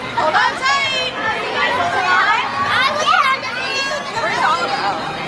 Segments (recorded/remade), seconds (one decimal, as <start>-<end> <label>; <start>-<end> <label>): 0.0-5.3 recorded